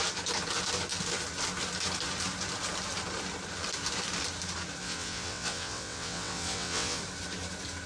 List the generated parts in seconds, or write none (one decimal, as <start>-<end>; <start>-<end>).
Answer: 4.8-7.0

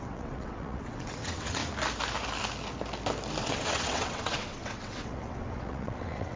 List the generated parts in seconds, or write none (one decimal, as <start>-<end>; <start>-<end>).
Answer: 0.0-1.6; 3.4-6.4

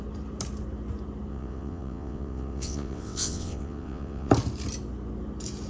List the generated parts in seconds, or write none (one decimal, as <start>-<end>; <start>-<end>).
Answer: 1.3-4.3

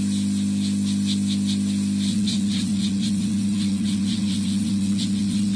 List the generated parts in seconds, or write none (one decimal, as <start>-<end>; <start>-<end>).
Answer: 2.1-5.6

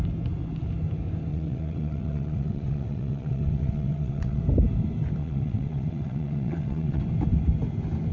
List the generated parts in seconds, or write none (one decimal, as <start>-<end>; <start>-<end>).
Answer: 1.3-4.4; 5.2-7.0

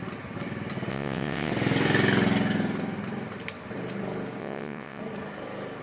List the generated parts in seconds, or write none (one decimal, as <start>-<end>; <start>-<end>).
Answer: 0.9-1.5; 4.4-5.0

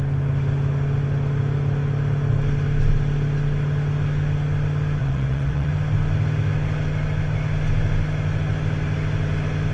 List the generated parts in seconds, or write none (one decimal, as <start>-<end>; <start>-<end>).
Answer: 5.0-5.7